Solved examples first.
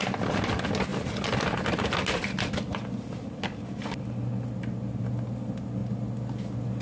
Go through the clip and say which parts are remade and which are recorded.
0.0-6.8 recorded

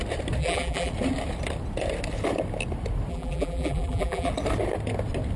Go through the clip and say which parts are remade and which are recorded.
0.0-0.4 recorded; 0.4-0.9 remade; 0.9-3.1 recorded; 3.1-4.3 remade; 4.3-5.4 recorded

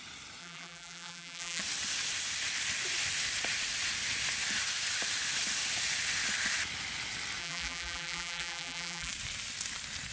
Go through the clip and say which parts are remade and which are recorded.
0.0-0.4 recorded; 0.4-1.6 remade; 1.6-7.4 recorded; 7.4-9.1 remade; 9.1-10.1 recorded

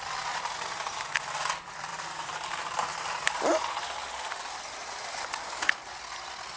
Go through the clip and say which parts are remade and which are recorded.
0.0-1.9 recorded; 1.9-3.7 remade; 3.7-6.6 recorded

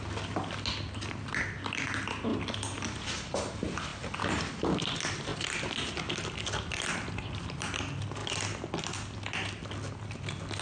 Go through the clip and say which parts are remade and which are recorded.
0.0-10.6 recorded

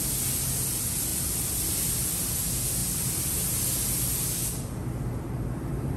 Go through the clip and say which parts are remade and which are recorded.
0.0-1.1 recorded; 1.1-2.3 remade; 2.3-6.0 recorded

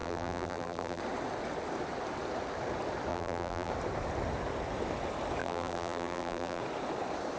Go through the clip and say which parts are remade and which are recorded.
0.0-1.0 remade; 1.0-3.1 recorded; 3.1-3.7 remade; 3.7-5.4 recorded; 5.4-6.6 remade; 6.6-7.4 recorded

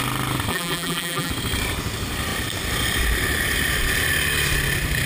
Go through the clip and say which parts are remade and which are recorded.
0.0-0.5 recorded; 0.5-1.3 remade; 1.3-5.1 recorded